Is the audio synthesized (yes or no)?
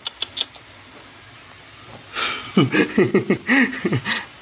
no